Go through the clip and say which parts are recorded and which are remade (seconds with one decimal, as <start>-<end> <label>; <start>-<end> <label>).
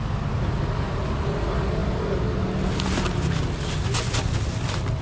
0.0-5.0 recorded